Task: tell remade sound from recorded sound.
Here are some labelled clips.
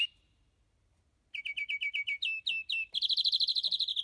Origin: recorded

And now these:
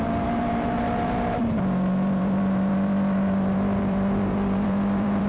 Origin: remade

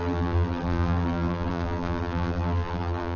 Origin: remade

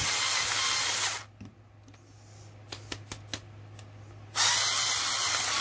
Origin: recorded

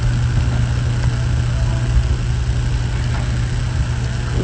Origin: recorded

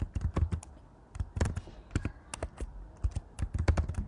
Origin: recorded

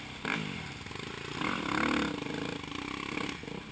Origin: recorded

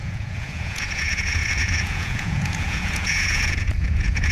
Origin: remade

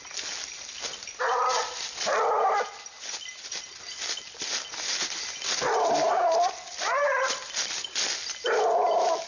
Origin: recorded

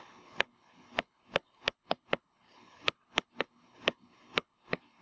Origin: remade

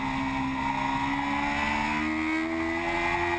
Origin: recorded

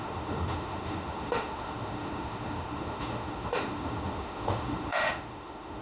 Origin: remade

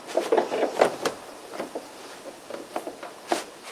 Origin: recorded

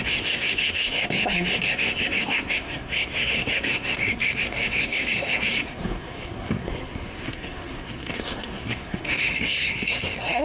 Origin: remade